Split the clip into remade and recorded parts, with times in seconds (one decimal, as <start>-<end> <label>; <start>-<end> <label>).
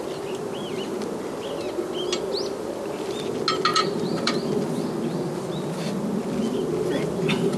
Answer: 0.0-3.7 recorded; 3.7-4.5 remade; 4.5-7.6 recorded